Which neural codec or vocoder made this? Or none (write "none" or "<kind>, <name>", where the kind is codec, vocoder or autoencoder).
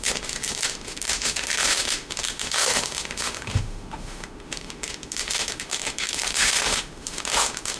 autoencoder, DAC-VAE